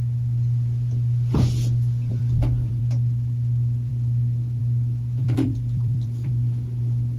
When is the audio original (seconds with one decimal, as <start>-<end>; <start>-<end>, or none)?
0.0-2.1; 2.8-5.2; 6.3-7.2